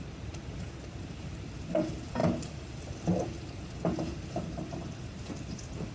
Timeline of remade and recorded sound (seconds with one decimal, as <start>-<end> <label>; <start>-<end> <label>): 0.0-5.9 recorded